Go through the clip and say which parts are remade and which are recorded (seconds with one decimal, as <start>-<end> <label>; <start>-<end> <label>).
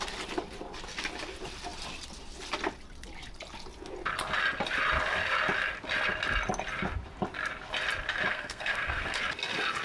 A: 0.0-8.3 recorded; 8.3-9.2 remade; 9.2-9.8 recorded